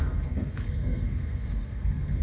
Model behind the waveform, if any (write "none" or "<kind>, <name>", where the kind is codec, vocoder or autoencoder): codec, SNAC